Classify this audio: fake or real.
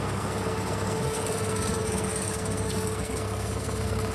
fake